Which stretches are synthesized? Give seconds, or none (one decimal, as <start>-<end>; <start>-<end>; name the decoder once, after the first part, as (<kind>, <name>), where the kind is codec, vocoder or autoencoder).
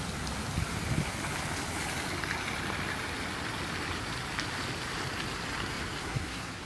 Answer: 6.0-6.7 (codec, SNAC)